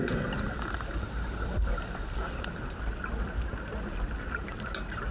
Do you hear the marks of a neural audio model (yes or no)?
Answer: no